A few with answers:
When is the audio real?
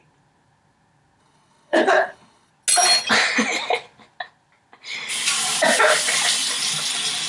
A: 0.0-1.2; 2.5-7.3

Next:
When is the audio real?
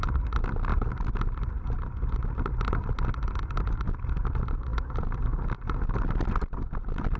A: 0.0-7.2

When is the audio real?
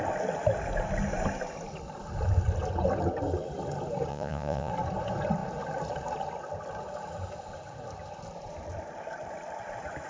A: 0.0-4.1; 4.7-10.1